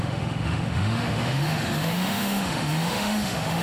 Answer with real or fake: fake